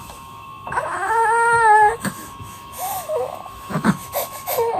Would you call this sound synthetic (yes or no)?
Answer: yes